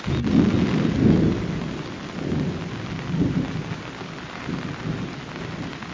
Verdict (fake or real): real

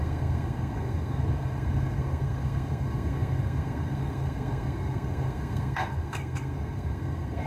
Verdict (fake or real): fake